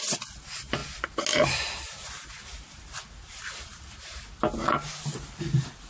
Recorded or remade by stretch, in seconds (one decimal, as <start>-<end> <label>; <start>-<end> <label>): 0.0-5.9 recorded